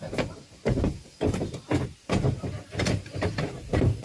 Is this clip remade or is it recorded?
remade